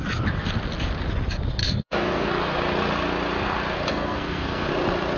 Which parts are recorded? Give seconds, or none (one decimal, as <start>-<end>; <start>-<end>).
0.0-1.6; 2.3-3.9; 4.7-5.2